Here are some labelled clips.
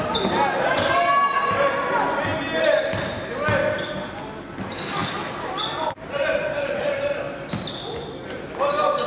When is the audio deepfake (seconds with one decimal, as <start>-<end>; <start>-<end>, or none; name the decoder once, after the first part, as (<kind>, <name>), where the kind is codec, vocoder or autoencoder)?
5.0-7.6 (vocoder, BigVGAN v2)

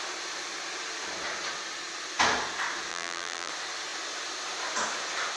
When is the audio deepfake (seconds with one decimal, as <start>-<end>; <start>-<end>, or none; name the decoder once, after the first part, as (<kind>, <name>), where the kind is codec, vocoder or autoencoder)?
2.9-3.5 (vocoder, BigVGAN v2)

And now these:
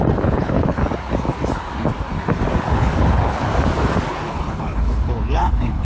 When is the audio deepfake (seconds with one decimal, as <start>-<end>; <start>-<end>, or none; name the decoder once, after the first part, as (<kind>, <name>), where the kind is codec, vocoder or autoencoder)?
0.0-0.8 (codec, HILCodec); 2.6-3.5; 4.1-5.8

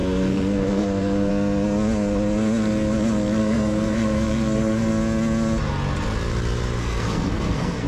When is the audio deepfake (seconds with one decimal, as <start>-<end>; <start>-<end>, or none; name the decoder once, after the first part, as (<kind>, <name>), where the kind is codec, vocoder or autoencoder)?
0.0-1.3 (codec, SNAC); 3.4-4.9; 6.8-7.9

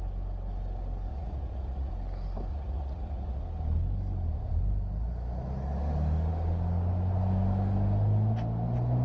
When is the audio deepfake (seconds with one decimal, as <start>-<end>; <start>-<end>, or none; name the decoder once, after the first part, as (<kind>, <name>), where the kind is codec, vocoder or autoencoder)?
1.1-1.9 (vocoder, Vocos); 2.5-3.4

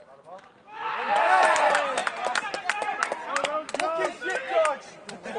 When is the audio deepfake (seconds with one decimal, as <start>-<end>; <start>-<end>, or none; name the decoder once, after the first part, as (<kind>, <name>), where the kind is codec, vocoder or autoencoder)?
none